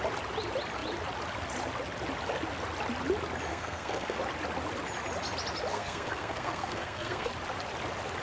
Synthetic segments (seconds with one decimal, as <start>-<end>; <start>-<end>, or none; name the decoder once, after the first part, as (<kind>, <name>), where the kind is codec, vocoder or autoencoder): 3.5-4.2 (codec, SNAC); 5.7-7.3